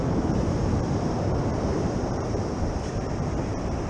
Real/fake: fake